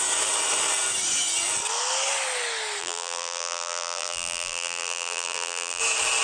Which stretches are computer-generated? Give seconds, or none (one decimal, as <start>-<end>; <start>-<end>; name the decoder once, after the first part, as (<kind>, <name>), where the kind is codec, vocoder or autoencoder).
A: 2.8-5.8 (vocoder, BigVGAN v2)